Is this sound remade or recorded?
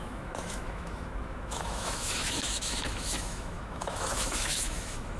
remade